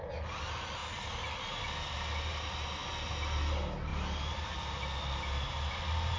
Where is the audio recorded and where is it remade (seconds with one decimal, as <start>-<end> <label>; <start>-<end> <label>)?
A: 0.0-6.2 recorded